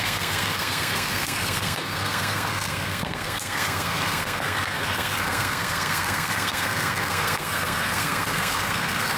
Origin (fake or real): fake